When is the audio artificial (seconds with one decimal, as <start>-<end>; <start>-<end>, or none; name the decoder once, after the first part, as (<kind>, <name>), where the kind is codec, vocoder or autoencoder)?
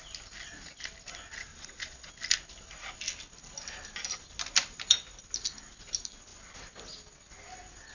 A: 1.5-2.1 (vocoder, Vocos)